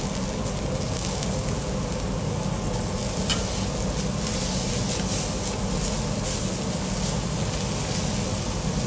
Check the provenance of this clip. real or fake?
real